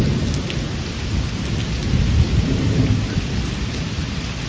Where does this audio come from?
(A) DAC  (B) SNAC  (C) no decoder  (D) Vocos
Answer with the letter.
C